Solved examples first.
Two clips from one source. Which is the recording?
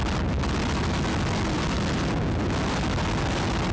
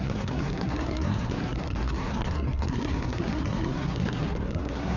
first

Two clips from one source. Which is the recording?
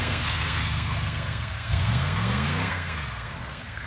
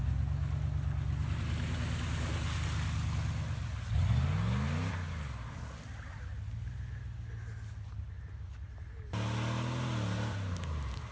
second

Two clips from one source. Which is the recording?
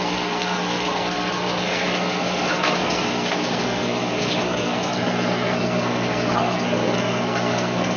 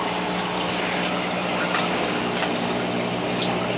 second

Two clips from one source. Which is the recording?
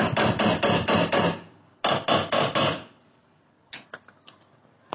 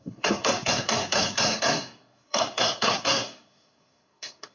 first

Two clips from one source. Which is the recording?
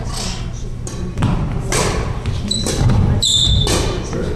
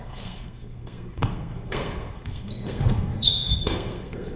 first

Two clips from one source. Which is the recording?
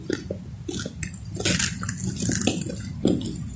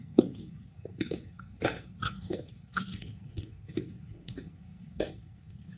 first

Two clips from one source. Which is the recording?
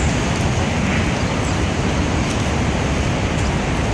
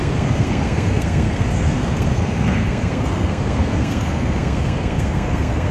first